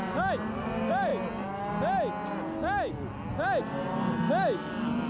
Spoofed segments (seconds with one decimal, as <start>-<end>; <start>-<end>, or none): none